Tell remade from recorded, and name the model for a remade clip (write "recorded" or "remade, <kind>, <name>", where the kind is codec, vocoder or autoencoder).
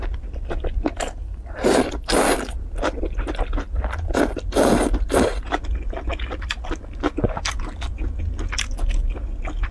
recorded